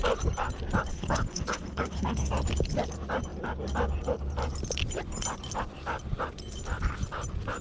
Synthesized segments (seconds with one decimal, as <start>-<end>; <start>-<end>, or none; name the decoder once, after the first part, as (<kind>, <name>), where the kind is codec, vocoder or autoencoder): 0.9-2.3 (codec, HILCodec)